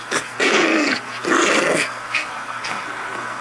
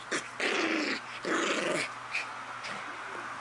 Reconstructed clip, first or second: first